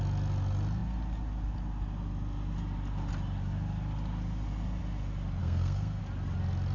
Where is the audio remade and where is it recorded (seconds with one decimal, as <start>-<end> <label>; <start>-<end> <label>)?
0.0-5.4 recorded; 5.4-6.0 remade; 6.0-6.7 recorded

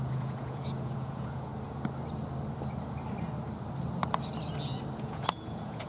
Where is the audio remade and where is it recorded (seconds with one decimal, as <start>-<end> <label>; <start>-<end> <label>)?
0.0-1.5 remade; 1.5-5.0 recorded; 5.0-5.9 remade

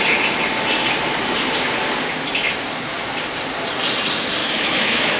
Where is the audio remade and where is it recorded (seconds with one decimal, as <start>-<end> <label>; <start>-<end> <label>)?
0.0-4.4 recorded; 4.4-5.2 remade

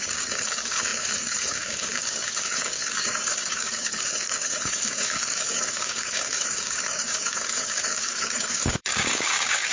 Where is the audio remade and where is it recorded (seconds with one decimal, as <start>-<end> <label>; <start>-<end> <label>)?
0.0-9.7 remade

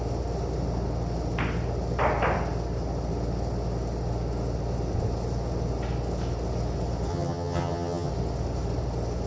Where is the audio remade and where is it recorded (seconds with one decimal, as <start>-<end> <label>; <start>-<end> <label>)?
0.0-7.1 recorded; 7.1-8.1 remade; 8.1-9.3 recorded

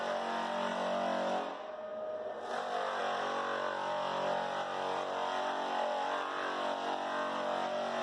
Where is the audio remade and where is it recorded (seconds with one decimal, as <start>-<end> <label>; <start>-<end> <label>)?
0.0-8.0 recorded

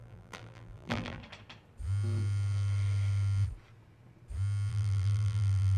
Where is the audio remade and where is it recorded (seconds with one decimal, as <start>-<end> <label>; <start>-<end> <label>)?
0.0-1.2 remade; 1.2-4.7 recorded; 4.7-5.8 remade